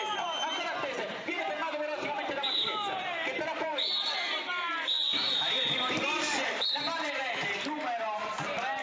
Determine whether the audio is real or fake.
fake